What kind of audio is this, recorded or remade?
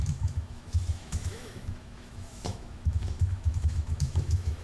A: remade